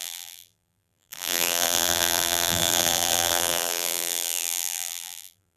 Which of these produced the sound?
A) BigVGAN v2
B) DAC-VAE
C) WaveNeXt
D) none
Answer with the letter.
A